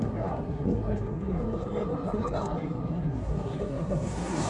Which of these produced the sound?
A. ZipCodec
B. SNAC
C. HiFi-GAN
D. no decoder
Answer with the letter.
B